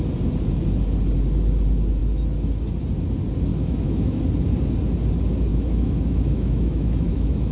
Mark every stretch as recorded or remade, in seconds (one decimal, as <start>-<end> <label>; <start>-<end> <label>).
0.0-3.5 recorded; 3.5-4.2 remade; 4.2-5.5 recorded; 5.5-7.5 remade